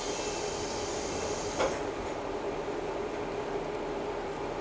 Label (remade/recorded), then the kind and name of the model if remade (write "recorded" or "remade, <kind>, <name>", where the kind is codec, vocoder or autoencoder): recorded